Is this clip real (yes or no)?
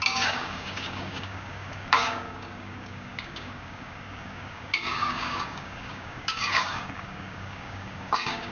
no